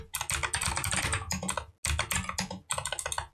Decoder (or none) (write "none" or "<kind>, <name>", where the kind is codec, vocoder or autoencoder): none